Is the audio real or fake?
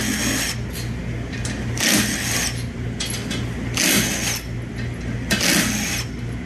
real